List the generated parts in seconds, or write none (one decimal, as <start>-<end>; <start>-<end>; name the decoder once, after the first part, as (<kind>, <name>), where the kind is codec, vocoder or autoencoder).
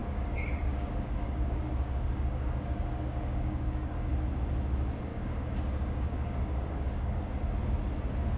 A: 0.0-4.1 (codec, DAC); 5.1-7.2